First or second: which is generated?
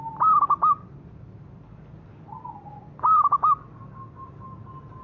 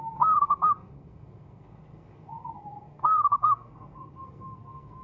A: second